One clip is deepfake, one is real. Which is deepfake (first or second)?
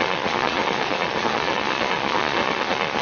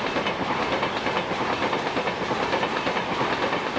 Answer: first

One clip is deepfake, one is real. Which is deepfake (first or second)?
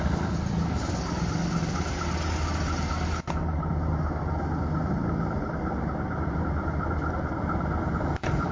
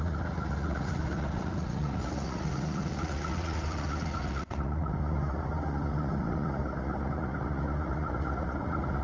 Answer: second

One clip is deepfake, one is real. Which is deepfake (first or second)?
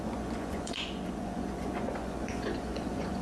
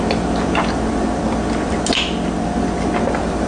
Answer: first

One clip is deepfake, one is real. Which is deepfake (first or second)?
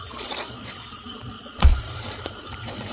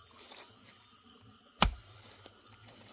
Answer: first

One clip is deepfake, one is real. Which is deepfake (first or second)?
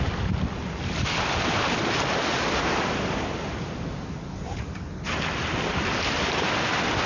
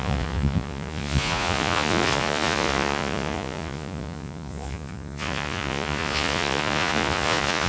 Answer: second